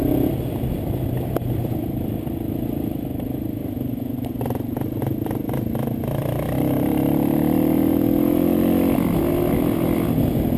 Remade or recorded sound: recorded